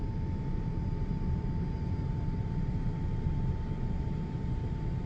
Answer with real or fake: real